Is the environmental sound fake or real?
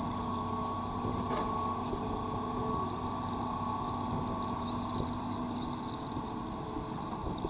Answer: real